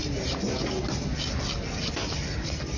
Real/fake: real